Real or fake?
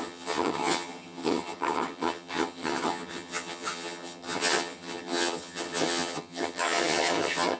fake